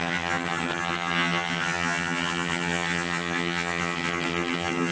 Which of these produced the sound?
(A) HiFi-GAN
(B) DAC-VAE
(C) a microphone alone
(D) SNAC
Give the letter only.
A